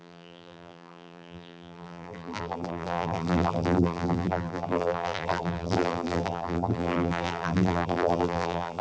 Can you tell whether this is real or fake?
fake